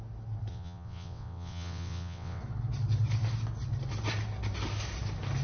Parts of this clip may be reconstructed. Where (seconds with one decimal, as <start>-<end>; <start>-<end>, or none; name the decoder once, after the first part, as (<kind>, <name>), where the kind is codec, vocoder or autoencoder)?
0.5-2.4 (vocoder, WaveNeXt)